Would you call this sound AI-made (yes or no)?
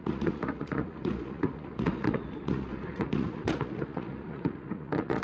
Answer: yes